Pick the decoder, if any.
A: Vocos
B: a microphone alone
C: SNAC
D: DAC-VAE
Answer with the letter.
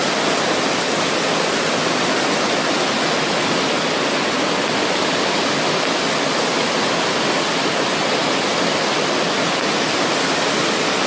B